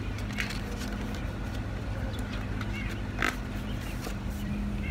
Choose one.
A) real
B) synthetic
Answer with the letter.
A